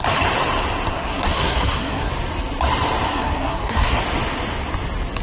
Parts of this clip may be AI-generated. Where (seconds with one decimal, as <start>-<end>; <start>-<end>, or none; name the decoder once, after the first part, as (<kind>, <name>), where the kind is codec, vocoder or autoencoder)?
0.9-2.1 (codec, SNAC); 3.1-4.0